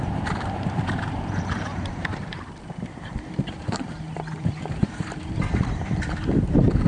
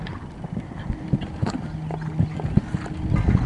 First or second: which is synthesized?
first